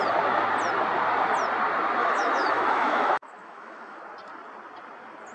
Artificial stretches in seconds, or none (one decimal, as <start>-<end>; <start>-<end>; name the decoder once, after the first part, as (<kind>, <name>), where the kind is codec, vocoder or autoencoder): 2.0-4.0 (autoencoder, DAC-VAE)